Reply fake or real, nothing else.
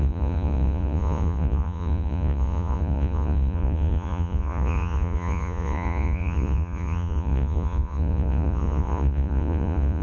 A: fake